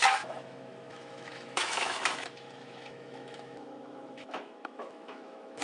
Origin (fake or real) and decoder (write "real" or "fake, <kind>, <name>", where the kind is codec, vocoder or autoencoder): fake, autoencoder, DAC-VAE